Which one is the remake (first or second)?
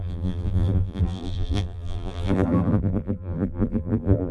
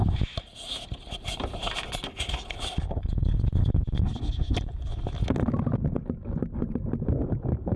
first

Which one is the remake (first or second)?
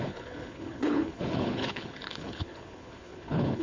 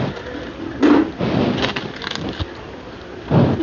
first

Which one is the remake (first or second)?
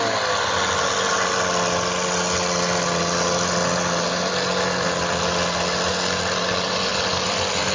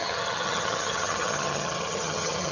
second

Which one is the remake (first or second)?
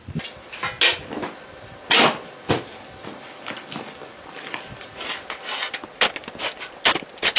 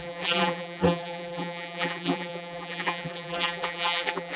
second